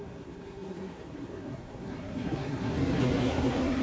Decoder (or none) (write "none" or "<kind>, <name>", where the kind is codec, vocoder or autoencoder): codec, SNAC